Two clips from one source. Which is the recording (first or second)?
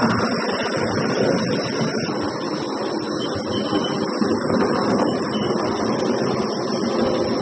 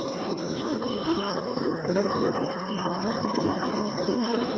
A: first